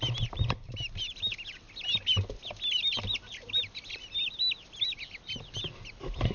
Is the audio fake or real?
real